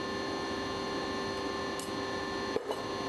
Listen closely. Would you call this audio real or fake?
real